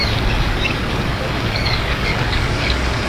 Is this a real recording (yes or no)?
no